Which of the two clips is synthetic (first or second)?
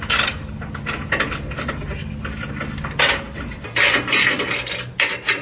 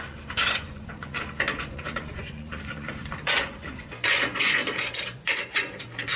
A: second